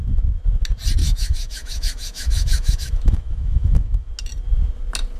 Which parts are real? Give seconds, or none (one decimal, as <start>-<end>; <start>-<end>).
0.0-1.0; 4.1-5.2